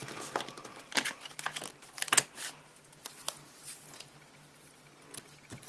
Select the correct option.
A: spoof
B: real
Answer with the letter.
B